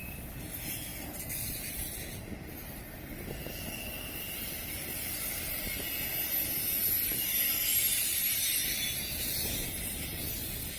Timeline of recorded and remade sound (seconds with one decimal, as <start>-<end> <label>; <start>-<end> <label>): 0.0-10.8 recorded